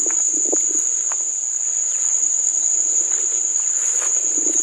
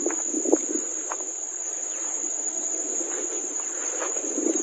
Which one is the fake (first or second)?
second